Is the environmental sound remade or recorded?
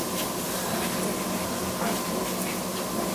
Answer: recorded